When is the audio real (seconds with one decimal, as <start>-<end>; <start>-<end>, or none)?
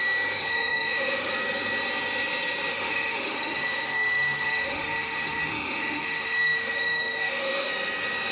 0.0-0.4; 1.3-2.7; 7.7-8.3